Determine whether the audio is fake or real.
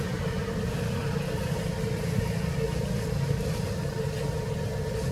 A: real